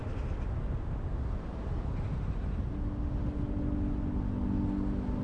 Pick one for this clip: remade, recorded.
recorded